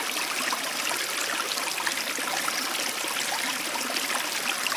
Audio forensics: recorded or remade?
recorded